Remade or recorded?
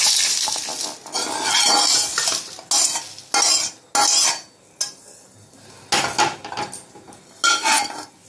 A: recorded